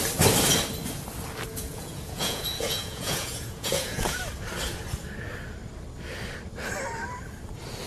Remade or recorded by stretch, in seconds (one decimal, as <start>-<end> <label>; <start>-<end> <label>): 0.0-1.5 recorded; 1.5-4.2 remade; 4.2-7.9 recorded